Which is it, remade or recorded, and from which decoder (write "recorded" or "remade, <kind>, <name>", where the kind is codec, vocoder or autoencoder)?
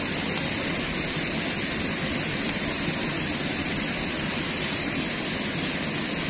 remade, vocoder, BigVGAN v2